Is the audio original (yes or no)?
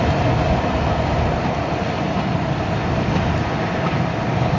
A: yes